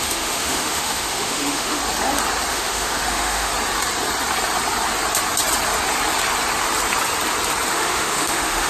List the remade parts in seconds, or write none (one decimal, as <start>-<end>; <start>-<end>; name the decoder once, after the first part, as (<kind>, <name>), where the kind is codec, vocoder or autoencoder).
0.0-1.8 (autoencoder, DAC-VAE); 2.5-3.5; 7.7-8.7